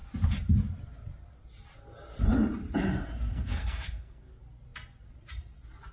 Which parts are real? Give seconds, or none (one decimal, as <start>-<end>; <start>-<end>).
0.0-3.3; 4.3-5.9